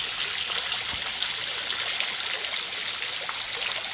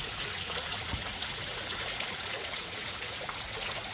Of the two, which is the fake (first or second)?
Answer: second